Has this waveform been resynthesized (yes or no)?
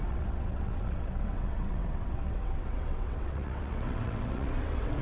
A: yes